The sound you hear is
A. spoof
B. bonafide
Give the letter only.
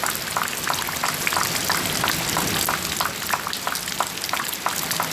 B